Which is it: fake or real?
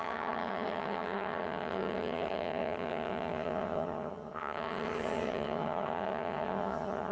fake